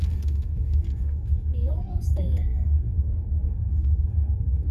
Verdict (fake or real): fake